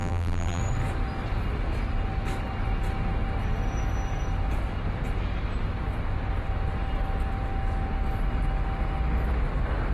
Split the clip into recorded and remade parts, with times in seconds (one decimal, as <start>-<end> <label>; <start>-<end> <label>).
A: 0.0-0.6 remade; 0.6-9.9 recorded